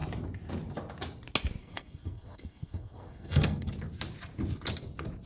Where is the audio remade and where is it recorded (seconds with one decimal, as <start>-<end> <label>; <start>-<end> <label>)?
0.0-1.6 recorded; 1.6-3.7 remade; 3.7-5.3 recorded